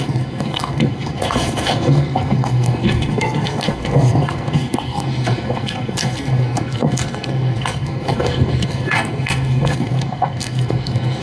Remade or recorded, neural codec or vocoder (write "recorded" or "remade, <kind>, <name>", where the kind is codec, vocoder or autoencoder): remade, codec, SNAC